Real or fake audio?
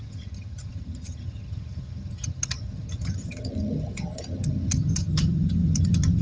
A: fake